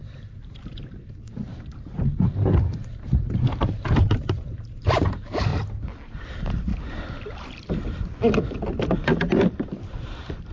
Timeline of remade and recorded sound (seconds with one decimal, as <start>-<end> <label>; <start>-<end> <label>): 0.0-5.5 remade; 5.5-6.1 recorded; 6.1-6.7 remade; 6.7-9.8 recorded; 9.8-10.5 remade